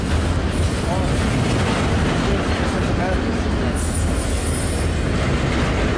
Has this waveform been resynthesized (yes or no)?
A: no